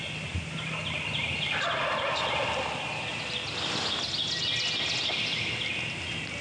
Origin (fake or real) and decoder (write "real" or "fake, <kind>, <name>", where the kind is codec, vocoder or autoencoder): real